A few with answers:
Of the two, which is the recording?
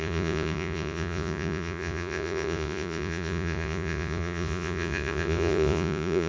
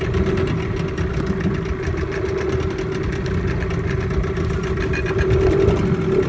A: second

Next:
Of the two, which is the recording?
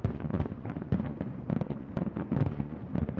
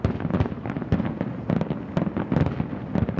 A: second